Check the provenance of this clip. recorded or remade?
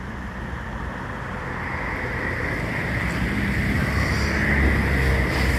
recorded